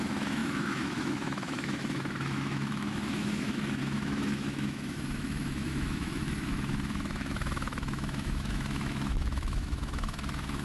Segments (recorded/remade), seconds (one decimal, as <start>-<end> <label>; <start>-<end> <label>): 0.0-10.6 remade